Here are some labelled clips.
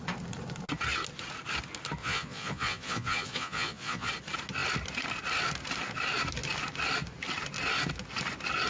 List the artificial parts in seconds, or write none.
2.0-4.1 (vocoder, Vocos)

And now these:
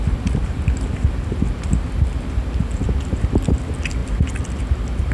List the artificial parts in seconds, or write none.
none

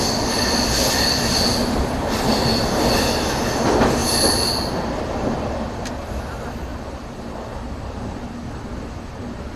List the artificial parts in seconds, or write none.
4.0-4.7 (vocoder, BigVGAN v2)

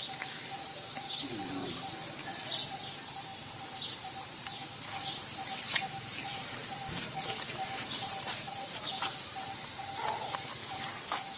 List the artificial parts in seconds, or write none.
0.0-2.2 (vocoder, BigVGAN v2); 2.7-4.6; 5.7-6.6; 7.5-11.4